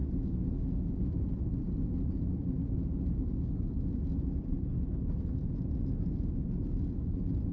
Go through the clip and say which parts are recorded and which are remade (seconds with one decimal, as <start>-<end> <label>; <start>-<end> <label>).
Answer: 0.0-7.5 recorded

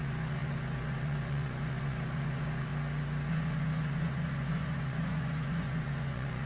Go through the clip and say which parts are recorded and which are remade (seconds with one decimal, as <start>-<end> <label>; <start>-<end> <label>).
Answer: 0.0-2.7 remade; 2.7-3.3 recorded; 3.3-6.5 remade